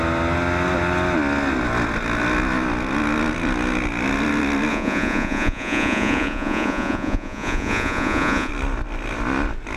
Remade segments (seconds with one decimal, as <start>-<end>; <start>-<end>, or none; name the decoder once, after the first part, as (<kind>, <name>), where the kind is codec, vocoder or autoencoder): 4.7-8.5 (vocoder, Vocos)